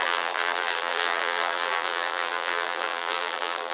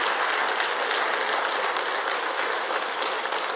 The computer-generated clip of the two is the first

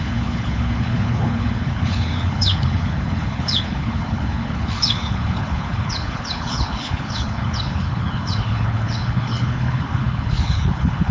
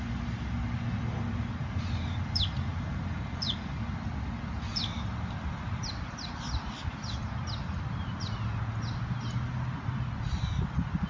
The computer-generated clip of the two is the first